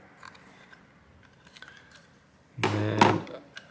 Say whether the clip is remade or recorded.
recorded